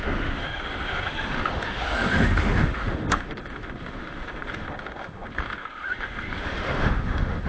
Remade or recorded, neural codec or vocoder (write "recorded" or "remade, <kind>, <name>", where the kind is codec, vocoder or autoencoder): remade, autoencoder, DAC-VAE